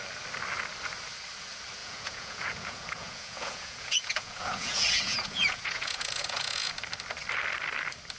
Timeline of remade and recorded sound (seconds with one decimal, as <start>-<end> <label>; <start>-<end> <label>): 0.0-1.8 recorded; 1.8-6.7 remade; 6.7-8.2 recorded